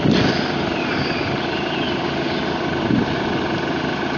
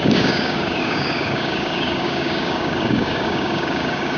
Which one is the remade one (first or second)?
second